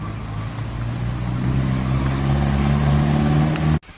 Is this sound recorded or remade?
recorded